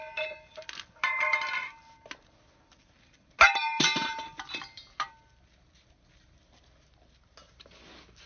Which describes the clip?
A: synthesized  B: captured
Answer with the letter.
B